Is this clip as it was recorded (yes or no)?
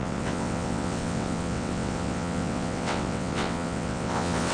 no